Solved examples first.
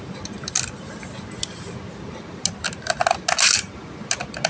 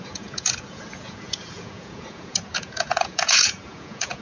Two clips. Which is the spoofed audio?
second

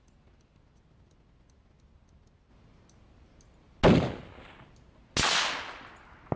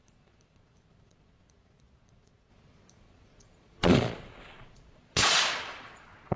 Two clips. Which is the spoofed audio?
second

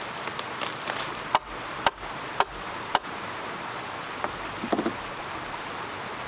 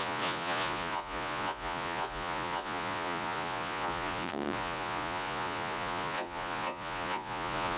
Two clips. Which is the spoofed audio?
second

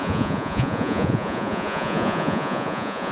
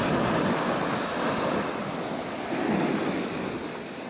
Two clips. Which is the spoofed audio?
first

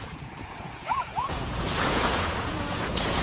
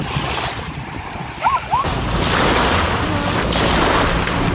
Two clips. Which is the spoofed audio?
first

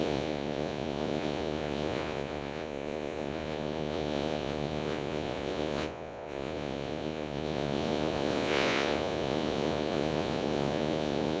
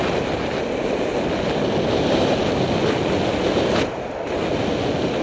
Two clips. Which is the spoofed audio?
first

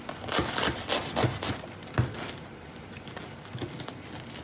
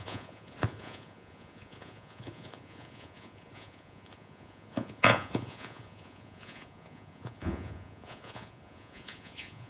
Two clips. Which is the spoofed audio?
second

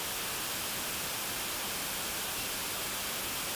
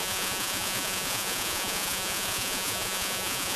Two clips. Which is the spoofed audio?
second